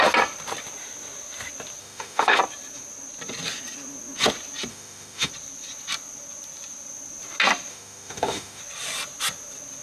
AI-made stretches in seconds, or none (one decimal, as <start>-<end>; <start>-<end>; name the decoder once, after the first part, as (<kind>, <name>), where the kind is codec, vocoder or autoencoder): 1.8-2.4 (autoencoder, DAC-VAE); 4.7-5.3; 7.7-8.6

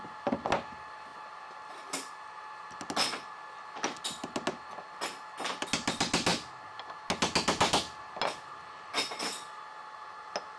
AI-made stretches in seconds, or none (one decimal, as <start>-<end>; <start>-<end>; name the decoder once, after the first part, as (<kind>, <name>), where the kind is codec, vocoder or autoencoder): none

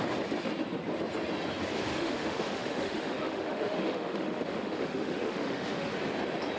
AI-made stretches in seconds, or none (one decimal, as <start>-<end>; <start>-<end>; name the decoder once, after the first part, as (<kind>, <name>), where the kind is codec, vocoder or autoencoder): 1.9-5.9 (autoencoder, DAC-VAE)

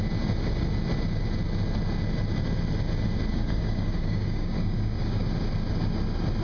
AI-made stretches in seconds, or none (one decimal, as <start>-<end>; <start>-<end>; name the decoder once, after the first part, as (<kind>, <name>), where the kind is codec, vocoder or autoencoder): 3.3-5.2 (codec, DAC)

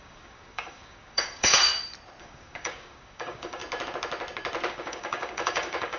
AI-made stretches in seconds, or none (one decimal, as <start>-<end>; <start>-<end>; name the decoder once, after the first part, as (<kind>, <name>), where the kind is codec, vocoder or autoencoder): 0.0-1.7 (codec, DAC); 2.2-3.6; 4.7-6.0

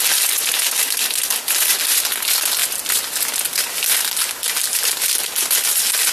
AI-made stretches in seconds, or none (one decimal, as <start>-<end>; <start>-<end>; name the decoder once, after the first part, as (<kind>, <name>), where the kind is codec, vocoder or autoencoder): none

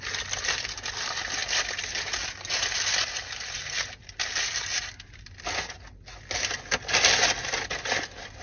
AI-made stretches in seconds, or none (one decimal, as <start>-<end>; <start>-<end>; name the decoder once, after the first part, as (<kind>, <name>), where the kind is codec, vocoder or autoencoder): none

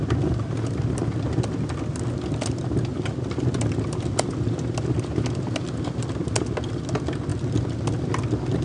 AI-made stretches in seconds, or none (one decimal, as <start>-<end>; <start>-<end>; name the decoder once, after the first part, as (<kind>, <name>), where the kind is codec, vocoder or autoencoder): none